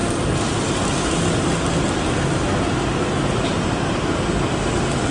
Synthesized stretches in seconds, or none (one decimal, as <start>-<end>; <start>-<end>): 0.0-0.6